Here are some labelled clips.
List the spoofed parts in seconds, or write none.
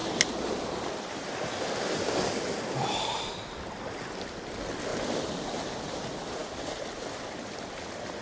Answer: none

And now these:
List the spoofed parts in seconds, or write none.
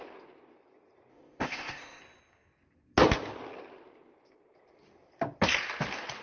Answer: 1.1-2.0